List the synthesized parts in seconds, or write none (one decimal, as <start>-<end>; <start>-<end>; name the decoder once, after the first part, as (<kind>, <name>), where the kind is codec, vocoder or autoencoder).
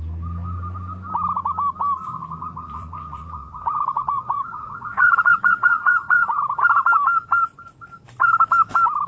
2.4-6.4 (vocoder, Vocos)